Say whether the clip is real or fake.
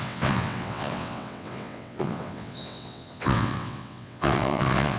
fake